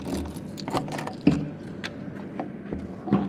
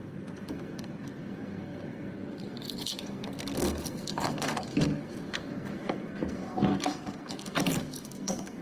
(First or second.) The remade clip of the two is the second